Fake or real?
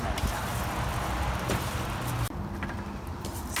real